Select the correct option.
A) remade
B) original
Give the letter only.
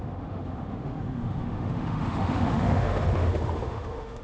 A